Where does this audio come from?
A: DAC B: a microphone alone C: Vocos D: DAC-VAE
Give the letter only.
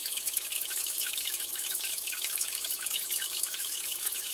D